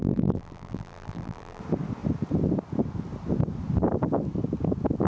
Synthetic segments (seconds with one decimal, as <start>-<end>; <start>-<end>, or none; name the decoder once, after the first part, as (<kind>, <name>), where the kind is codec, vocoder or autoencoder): 0.0-1.6 (vocoder, BigVGAN v2)